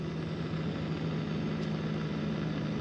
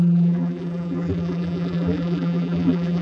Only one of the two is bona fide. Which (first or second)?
first